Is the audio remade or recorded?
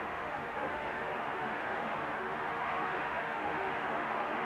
remade